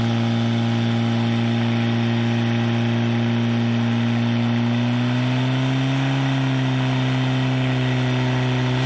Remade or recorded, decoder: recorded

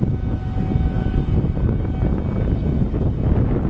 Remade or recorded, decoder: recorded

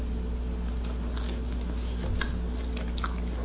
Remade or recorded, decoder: recorded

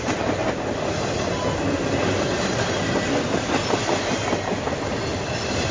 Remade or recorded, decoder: recorded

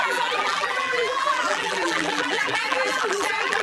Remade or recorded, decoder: remade, vocoder, BigVGAN v2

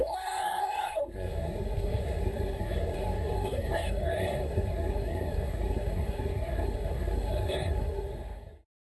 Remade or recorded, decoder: remade, codec, SNAC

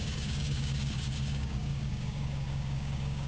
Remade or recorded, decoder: remade, codec, DAC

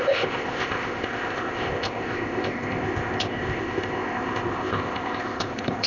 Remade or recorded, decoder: remade, codec, ZipCodec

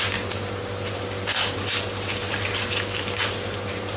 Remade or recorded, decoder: recorded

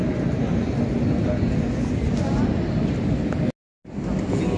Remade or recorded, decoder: recorded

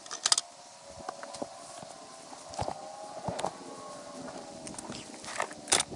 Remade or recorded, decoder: recorded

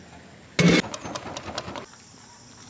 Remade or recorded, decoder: recorded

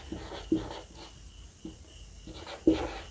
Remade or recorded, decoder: recorded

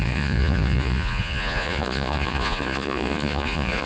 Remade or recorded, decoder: remade, vocoder, Vocos